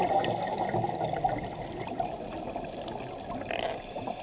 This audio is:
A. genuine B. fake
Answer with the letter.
A